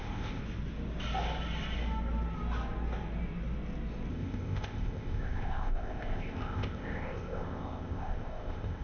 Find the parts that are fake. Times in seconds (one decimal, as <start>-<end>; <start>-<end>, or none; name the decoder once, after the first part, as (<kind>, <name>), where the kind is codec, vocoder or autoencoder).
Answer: 0.0-0.4 (codec, ZipCodec); 4.1-8.8